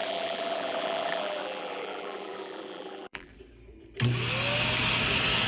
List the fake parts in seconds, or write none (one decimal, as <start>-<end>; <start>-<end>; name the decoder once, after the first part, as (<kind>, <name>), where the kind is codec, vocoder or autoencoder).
0.0-3.3 (vocoder, BigVGAN v2)